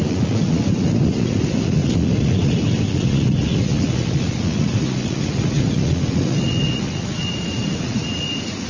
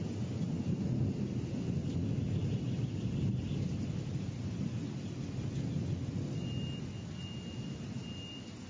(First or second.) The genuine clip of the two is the second